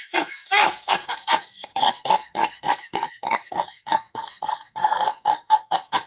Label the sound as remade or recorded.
remade